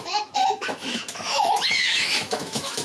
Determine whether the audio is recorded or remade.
remade